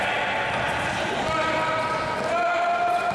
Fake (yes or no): no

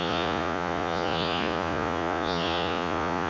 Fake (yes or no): yes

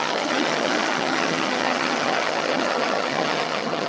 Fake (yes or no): yes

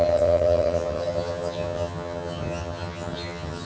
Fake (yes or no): yes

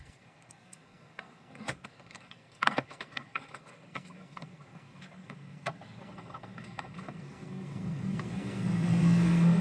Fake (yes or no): yes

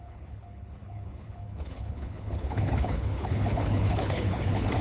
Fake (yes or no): yes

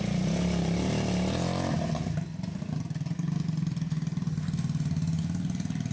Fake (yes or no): no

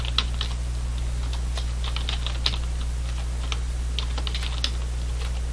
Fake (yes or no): no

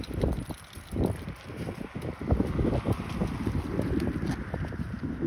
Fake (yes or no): no